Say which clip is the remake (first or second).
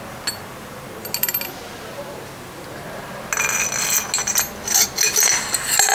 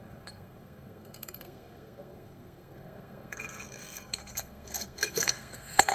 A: second